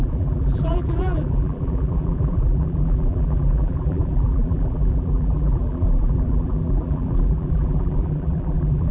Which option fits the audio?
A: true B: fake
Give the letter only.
B